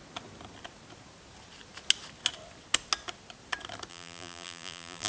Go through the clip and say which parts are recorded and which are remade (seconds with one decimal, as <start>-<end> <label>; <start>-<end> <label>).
0.0-3.9 recorded; 3.9-5.1 remade